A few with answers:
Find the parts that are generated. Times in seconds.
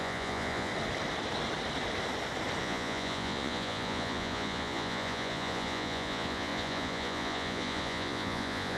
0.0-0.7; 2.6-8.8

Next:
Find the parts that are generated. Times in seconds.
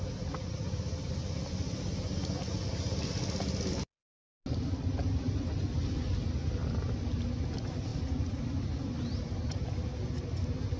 none